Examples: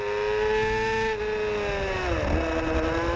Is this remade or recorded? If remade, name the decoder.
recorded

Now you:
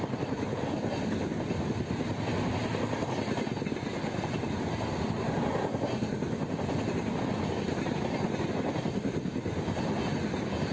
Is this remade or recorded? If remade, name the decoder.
recorded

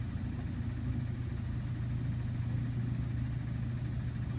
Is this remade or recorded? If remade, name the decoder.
recorded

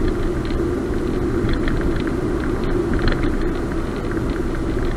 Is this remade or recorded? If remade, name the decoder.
recorded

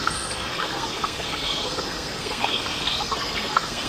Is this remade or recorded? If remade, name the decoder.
remade, codec, SNAC